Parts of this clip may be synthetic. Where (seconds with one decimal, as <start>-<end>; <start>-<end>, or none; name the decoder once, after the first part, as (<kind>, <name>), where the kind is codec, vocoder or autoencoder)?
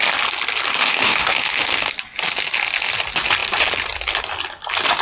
0.7-1.9 (autoencoder, DAC-VAE)